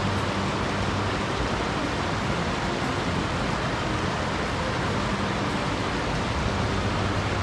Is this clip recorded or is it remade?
recorded